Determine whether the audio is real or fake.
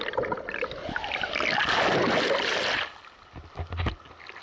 real